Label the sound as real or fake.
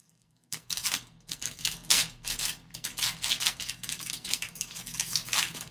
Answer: fake